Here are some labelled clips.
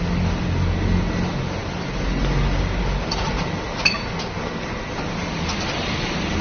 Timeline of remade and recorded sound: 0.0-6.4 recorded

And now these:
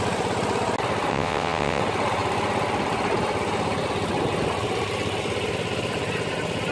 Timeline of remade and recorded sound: 0.0-1.1 recorded; 1.1-1.8 remade; 1.8-6.7 recorded

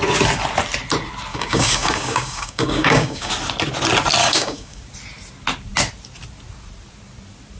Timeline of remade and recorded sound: 0.0-1.3 recorded; 1.3-3.3 remade; 3.3-4.2 recorded; 4.2-4.8 remade; 4.8-7.6 recorded

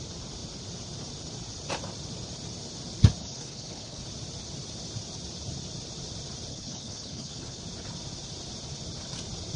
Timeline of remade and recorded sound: 0.0-3.2 recorded; 3.2-4.0 remade; 4.0-6.5 recorded; 6.5-7.6 remade; 7.6-9.6 recorded

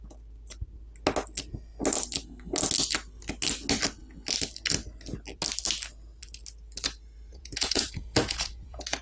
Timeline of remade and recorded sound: 0.0-7.3 recorded; 7.3-9.0 remade

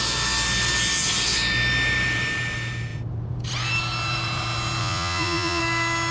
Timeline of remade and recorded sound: 0.0-4.8 recorded; 4.8-5.6 remade; 5.6-6.1 recorded